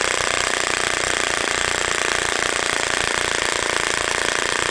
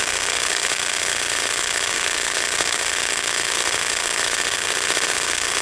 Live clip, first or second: first